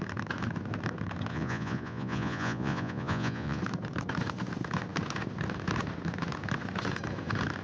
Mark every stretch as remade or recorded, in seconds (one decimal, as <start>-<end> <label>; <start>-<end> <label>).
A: 0.0-1.3 recorded; 1.3-3.6 remade; 3.6-7.6 recorded